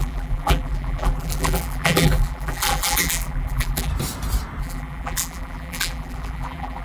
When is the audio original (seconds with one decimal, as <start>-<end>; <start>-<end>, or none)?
3.9-4.6